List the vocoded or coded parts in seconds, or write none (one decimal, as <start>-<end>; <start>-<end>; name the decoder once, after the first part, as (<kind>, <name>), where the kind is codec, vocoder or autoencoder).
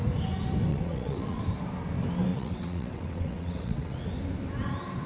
0.7-1.4 (vocoder, WaveNeXt); 2.3-4.0